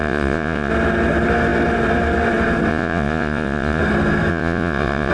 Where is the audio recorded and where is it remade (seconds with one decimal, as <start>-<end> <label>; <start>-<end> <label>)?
0.0-0.7 remade; 0.7-2.7 recorded; 2.7-3.8 remade; 3.8-4.3 recorded; 4.3-5.1 remade